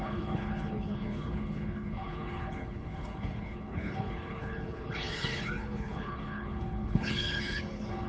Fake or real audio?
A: fake